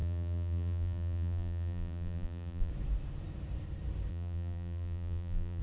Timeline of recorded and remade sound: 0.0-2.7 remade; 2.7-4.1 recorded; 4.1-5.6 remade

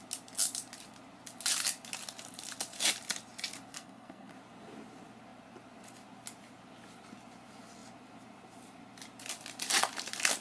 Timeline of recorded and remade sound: 0.0-3.7 recorded; 3.7-4.3 remade; 4.3-10.4 recorded

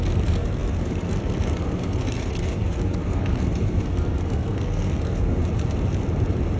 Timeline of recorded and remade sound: 0.0-5.4 remade; 5.4-6.6 recorded

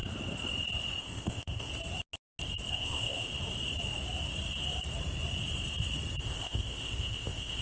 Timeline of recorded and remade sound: 0.0-1.0 recorded; 1.0-1.7 remade; 1.7-2.7 recorded; 2.7-3.3 remade; 3.3-6.2 recorded; 6.2-7.6 remade

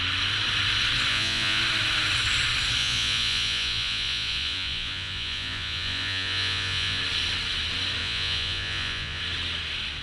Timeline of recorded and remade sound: 0.0-1.1 recorded; 1.1-1.6 remade; 1.6-2.8 recorded; 2.8-7.0 remade; 7.0-8.0 recorded; 8.0-9.2 remade; 9.2-10.0 recorded